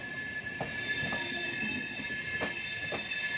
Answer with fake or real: real